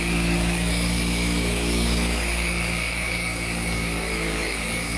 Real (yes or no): no